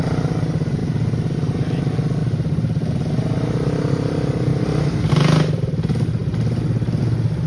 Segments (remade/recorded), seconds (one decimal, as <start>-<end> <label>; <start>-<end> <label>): 0.0-7.5 recorded